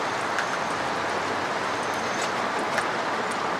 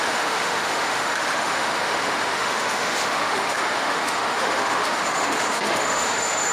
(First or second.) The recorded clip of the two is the first